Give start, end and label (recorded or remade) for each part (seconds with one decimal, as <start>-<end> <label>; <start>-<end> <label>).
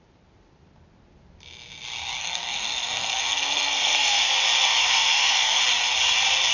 0.0-2.2 recorded; 2.2-4.2 remade; 4.2-4.8 recorded; 4.8-5.6 remade; 5.6-6.5 recorded